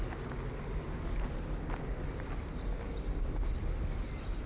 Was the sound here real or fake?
real